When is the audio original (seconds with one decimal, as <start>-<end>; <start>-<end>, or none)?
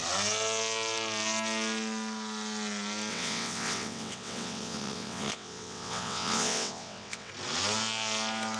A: 0.0-3.1; 7.3-8.6